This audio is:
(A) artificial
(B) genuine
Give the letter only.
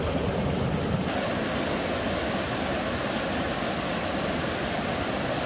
B